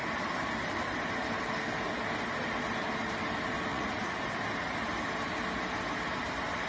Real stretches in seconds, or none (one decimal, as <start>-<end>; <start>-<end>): 0.0-3.7; 4.2-6.7